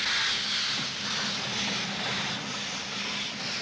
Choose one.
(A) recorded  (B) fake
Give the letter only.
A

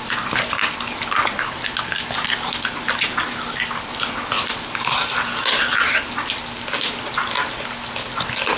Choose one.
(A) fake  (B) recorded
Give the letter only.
B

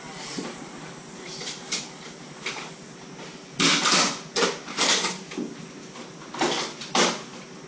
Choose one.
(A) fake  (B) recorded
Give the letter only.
B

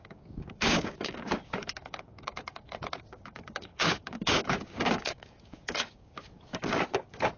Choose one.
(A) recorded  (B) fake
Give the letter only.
B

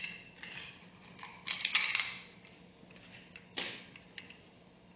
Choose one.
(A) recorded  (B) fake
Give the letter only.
A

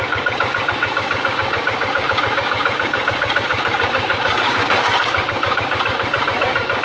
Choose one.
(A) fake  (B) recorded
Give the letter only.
A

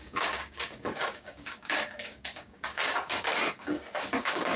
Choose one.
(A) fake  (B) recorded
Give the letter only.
A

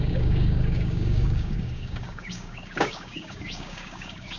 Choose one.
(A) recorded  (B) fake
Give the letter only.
B